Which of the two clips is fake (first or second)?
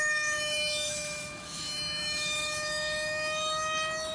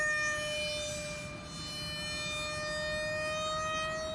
first